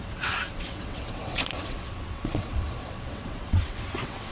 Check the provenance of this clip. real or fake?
fake